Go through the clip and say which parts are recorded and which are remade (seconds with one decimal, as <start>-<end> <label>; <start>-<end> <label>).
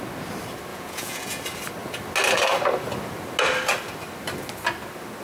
0.0-0.7 recorded; 0.7-1.4 remade; 1.4-5.2 recorded